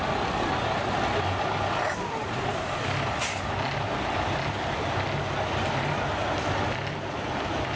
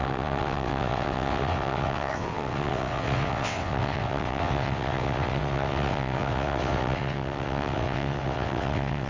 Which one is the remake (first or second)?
second